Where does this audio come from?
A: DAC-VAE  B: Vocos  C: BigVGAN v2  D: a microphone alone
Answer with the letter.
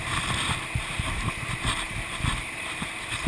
C